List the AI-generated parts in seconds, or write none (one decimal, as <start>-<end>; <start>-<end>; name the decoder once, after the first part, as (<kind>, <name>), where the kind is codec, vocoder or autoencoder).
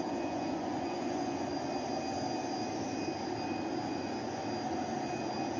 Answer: 0.0-1.5 (vocoder, Vocos); 3.9-4.4